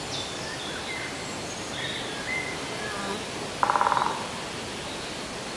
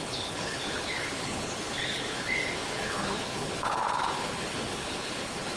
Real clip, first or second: first